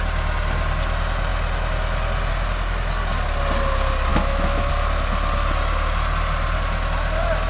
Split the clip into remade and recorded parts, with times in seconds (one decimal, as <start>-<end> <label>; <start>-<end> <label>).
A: 0.0-4.1 recorded; 4.1-4.7 remade; 4.7-7.5 recorded